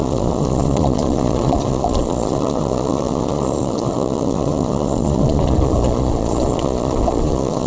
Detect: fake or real fake